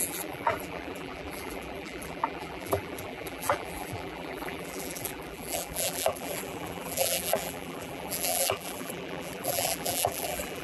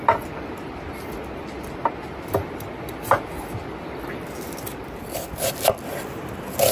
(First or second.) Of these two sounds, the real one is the second